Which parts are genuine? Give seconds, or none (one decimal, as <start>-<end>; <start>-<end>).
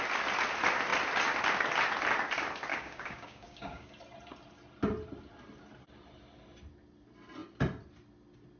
0.0-2.7; 3.9-8.6